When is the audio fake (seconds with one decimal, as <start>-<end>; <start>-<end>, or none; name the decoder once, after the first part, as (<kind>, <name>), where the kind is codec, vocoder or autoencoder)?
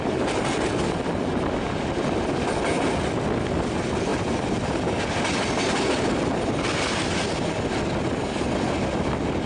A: none